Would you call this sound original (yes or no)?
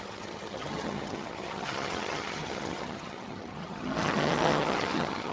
no